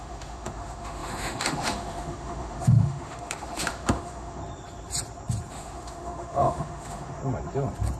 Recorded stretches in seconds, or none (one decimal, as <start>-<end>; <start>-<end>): 4.4-5.5; 7.2-8.0